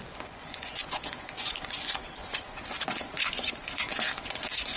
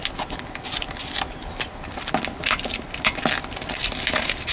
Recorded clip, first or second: second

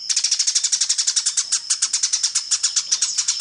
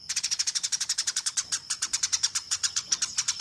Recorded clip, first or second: first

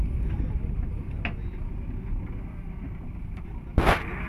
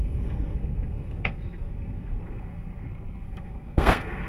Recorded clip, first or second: first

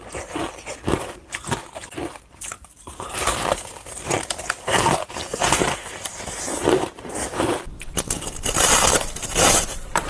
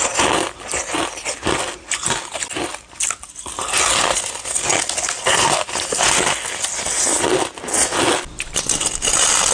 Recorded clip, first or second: second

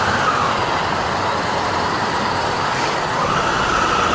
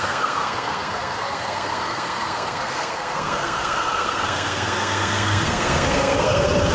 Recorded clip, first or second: first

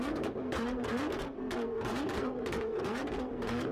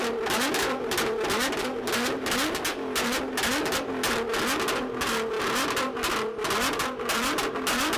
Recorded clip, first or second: second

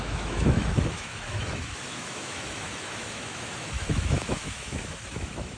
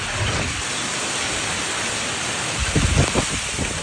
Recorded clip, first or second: second